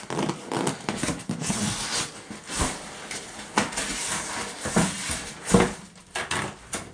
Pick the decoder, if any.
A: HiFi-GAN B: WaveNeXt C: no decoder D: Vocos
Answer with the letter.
C